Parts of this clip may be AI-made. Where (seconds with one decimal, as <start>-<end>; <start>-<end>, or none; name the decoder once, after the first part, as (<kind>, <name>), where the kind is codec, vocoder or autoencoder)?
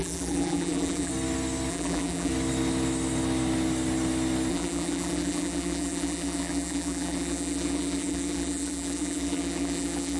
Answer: 0.0-1.1 (vocoder, BigVGAN v2); 1.7-2.3; 4.5-10.2